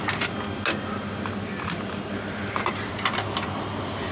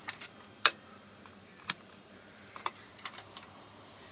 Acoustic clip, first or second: first